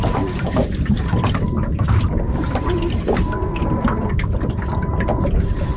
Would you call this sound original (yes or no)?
no